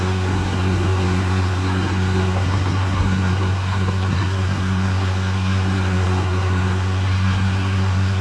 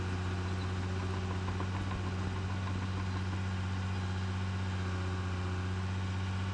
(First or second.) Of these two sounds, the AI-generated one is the first